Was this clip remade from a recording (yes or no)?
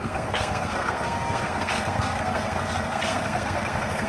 yes